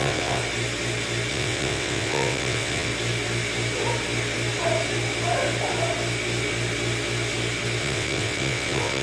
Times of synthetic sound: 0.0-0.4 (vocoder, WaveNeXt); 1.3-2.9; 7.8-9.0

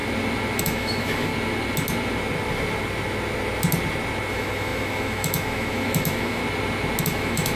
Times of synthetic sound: 0.6-1.3 (autoencoder, DAC-VAE); 4.3-6.4; 7.0-7.6

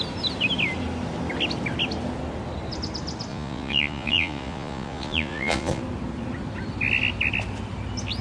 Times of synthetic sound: 3.3-5.8 (vocoder, Vocos)